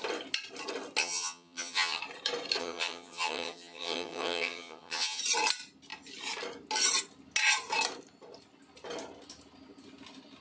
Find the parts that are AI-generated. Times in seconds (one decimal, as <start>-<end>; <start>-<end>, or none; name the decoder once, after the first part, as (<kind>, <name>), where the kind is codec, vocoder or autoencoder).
1.0-2.0 (vocoder, HiFi-GAN); 2.6-5.2